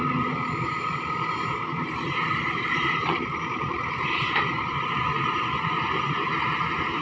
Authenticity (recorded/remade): remade